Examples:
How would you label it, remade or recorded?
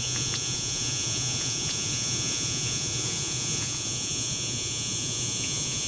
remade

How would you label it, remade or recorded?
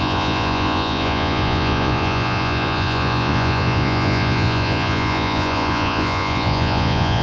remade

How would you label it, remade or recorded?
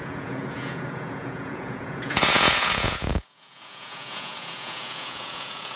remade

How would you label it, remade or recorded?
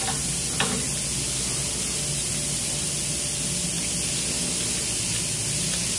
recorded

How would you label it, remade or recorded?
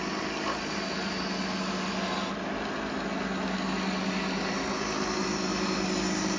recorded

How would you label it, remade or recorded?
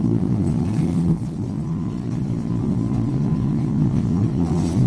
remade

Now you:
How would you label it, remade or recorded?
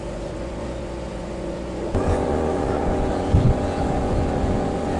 remade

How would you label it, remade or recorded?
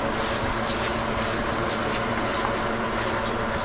recorded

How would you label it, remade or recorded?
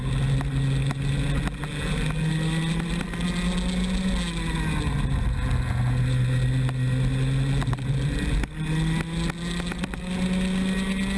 recorded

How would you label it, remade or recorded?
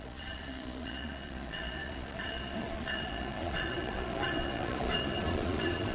remade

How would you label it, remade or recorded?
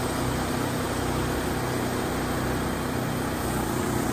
recorded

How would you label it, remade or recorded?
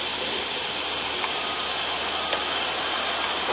recorded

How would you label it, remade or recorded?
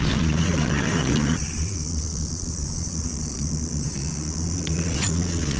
remade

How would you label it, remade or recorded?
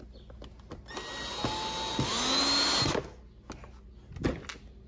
recorded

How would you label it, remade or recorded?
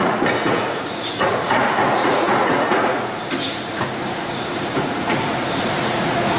remade